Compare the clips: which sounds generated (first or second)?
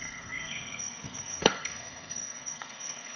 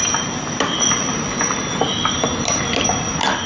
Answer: first